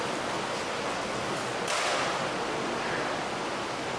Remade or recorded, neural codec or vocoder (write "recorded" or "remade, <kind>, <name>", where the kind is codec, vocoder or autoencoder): recorded